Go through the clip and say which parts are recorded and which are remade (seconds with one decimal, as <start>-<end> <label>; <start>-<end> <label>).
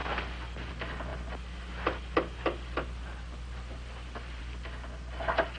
0.0-5.6 recorded